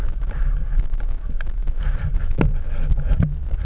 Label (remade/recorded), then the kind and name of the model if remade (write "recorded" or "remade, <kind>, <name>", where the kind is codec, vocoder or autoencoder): remade, vocoder, BigVGAN v2